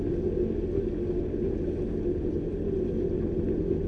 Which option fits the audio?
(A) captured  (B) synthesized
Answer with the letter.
A